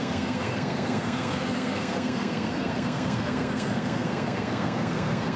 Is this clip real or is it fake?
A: fake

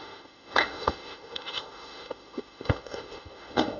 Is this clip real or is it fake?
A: fake